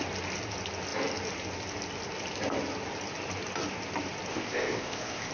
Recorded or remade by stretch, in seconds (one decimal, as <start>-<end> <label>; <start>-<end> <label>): 0.0-4.3 recorded; 4.3-5.3 remade